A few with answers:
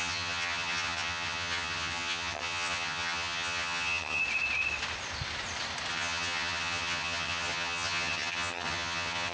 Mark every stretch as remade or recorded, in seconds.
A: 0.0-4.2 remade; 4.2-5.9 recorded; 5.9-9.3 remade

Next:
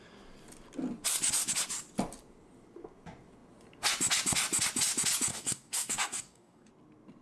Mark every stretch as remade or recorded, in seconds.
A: 0.0-5.3 recorded; 5.3-6.7 remade; 6.7-7.2 recorded

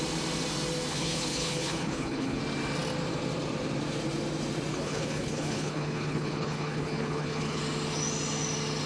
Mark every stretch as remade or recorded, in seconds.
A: 0.0-0.9 recorded; 0.9-2.4 remade; 2.4-4.7 recorded; 4.7-7.6 remade; 7.6-8.9 recorded

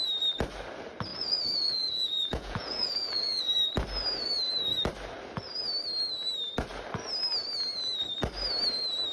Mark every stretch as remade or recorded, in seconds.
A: 0.0-1.1 recorded; 1.1-3.4 remade; 3.4-9.1 recorded

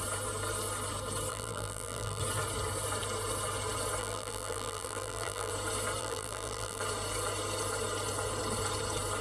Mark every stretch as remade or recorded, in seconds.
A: 0.0-1.3 recorded; 1.3-2.2 remade; 2.2-4.0 recorded; 4.0-5.5 remade; 5.5-6.0 recorded; 6.0-6.8 remade; 6.8-9.2 recorded

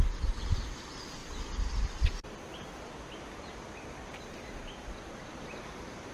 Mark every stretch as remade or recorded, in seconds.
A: 0.0-6.1 recorded